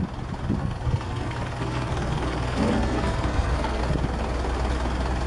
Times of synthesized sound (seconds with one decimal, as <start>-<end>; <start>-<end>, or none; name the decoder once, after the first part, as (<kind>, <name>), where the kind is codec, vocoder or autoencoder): 0.6-3.8 (codec, SNAC)